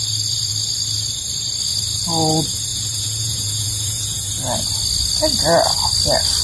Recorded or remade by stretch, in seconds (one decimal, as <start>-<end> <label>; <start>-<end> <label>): 0.0-2.7 recorded; 2.7-4.3 remade; 4.3-6.4 recorded